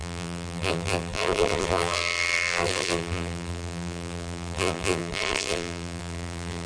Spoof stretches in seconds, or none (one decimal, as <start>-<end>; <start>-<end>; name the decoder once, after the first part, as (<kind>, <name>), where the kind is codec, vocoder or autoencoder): 0.0-6.7 (vocoder, BigVGAN v2)